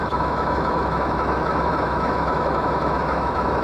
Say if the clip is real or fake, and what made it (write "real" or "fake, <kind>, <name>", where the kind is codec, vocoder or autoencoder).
fake, autoencoder, DAC-VAE